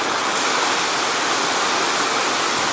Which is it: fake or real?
real